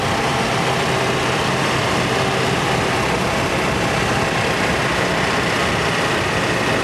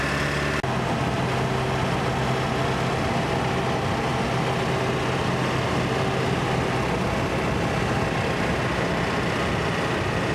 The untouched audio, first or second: second